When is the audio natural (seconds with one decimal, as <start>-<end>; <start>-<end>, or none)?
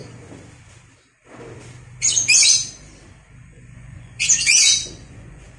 0.0-3.4